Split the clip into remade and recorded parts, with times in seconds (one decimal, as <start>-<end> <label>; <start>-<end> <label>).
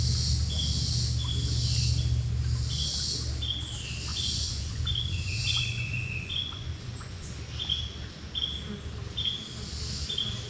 0.0-4.1 recorded; 4.1-7.2 remade; 7.2-10.5 recorded